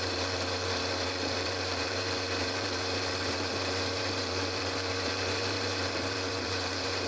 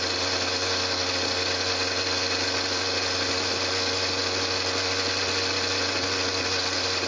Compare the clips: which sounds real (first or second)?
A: second